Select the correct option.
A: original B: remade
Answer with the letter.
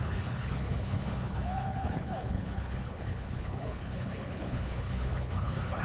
B